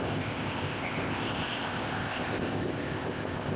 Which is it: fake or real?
fake